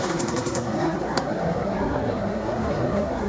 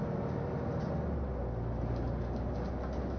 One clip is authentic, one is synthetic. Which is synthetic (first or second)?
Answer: first